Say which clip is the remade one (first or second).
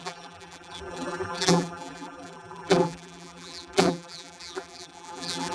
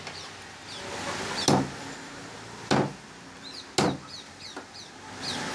first